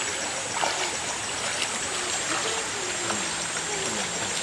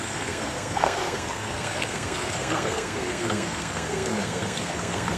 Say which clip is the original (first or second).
first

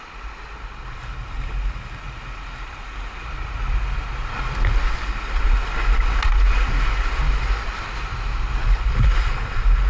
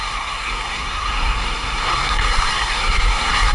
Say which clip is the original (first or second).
first